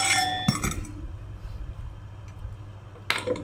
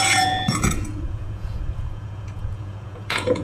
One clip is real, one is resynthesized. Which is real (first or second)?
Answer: first